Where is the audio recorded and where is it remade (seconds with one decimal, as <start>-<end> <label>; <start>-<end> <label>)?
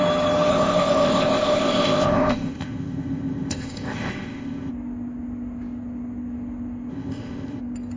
0.0-0.5 recorded; 0.5-4.7 remade; 4.7-6.9 recorded; 6.9-7.6 remade; 7.6-8.0 recorded